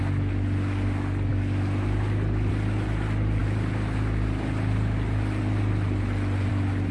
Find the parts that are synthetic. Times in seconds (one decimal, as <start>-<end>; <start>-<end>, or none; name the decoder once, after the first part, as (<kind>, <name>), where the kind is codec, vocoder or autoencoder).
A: none